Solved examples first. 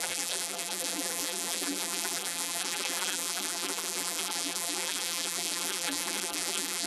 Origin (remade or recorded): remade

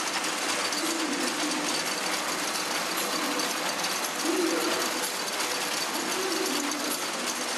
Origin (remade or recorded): recorded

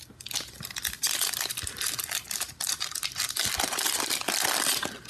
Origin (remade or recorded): recorded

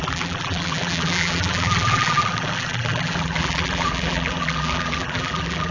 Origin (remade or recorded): remade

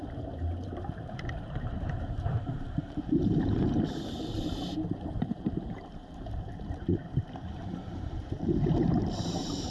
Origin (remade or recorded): remade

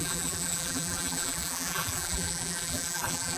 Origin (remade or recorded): remade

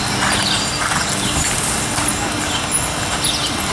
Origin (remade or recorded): recorded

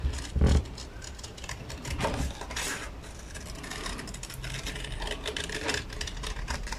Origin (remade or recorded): remade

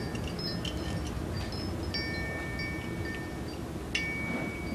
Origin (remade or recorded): recorded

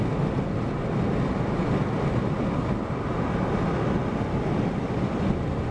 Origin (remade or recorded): recorded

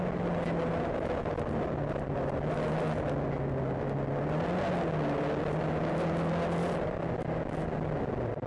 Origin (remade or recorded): recorded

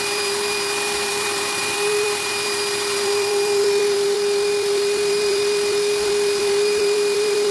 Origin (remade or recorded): remade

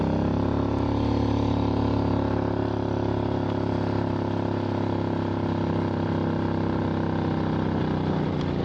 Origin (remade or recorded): recorded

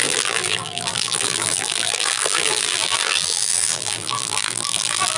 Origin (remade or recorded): remade